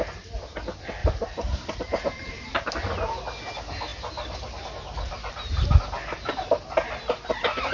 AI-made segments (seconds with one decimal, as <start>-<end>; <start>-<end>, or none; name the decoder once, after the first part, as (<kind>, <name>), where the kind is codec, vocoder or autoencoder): 1.0-2.7 (vocoder, BigVGAN v2)